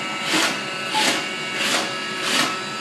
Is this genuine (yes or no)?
yes